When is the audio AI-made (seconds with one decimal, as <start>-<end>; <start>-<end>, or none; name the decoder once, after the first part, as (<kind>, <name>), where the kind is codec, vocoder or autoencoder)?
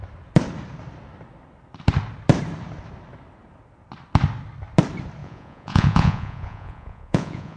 5.2-7.6 (vocoder, Vocos)